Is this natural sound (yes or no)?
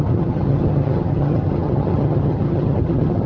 no